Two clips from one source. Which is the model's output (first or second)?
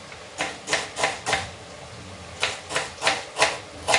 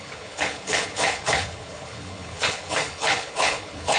second